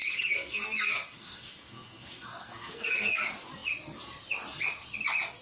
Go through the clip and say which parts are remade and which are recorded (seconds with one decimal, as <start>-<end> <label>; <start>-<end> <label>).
0.0-3.2 remade; 3.2-5.4 recorded